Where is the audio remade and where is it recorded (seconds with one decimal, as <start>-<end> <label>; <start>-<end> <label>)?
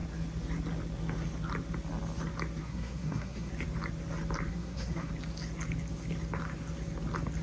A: 0.0-2.6 recorded; 2.6-3.5 remade; 3.5-4.5 recorded; 4.5-5.1 remade; 5.1-7.4 recorded